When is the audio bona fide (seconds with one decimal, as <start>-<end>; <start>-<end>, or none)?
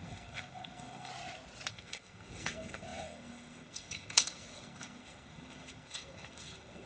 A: 1.1-1.7